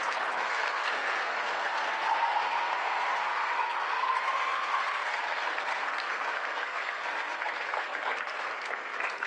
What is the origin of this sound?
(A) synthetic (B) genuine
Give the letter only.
A